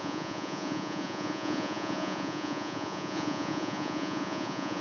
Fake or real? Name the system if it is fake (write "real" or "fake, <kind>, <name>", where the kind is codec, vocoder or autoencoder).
fake, vocoder, Vocos